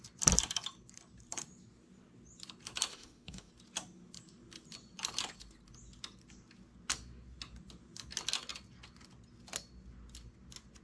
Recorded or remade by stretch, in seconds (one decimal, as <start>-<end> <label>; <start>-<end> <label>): 0.0-2.9 recorded; 2.9-3.5 remade; 3.5-10.8 recorded